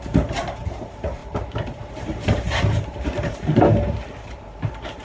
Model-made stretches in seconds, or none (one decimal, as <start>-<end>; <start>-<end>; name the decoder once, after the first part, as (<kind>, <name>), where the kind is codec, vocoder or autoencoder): 0.0-5.0 (vocoder, BigVGAN v2)